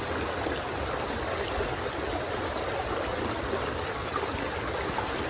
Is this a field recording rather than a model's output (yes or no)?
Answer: yes